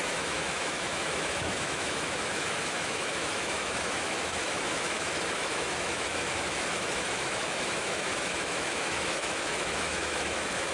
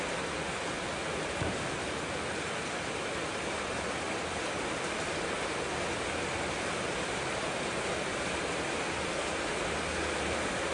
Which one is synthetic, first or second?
first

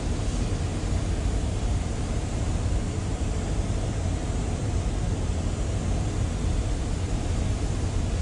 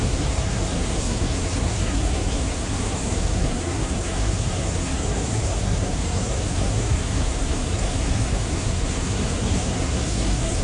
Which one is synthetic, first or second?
second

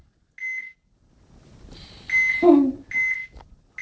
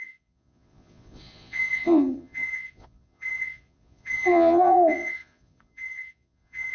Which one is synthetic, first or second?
second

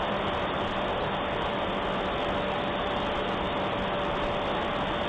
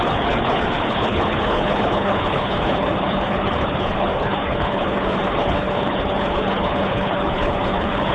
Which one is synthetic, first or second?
second